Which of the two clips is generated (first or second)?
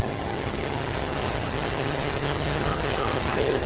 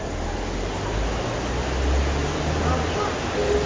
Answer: first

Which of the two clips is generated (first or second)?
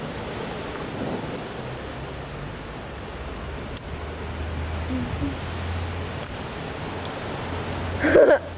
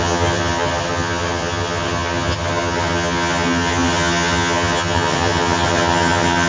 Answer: second